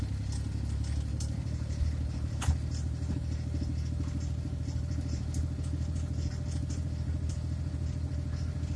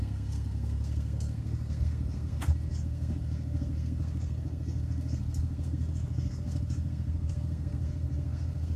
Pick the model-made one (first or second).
second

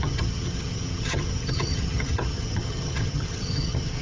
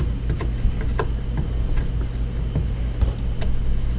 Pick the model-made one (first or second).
first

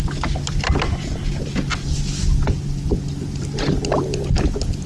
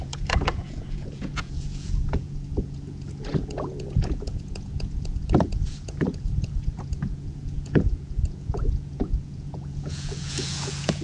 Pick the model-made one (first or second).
second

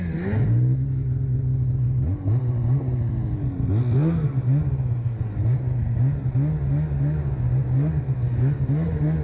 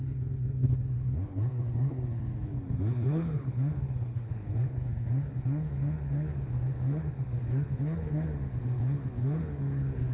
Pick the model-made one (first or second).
second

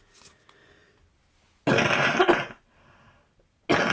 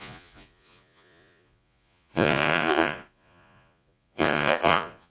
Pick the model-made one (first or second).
second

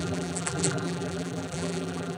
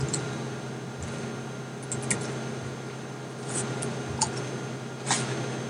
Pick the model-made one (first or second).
first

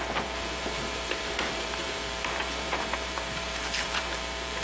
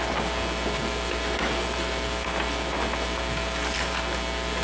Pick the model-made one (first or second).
first